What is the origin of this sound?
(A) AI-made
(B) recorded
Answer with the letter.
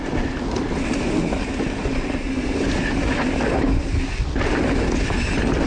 B